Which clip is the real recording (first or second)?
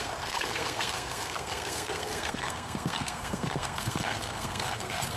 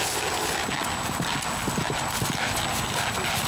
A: second